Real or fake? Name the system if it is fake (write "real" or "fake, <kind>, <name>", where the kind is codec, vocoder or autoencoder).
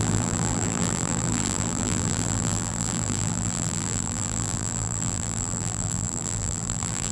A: fake, vocoder, BigVGAN v2